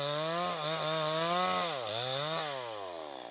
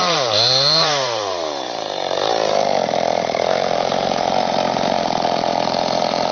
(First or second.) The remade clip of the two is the second